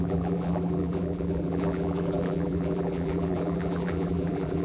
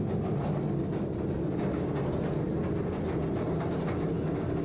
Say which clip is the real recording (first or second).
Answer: second